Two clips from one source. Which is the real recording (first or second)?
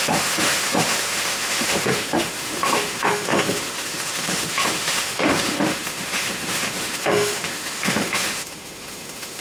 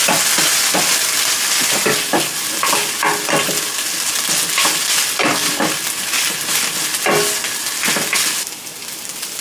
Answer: second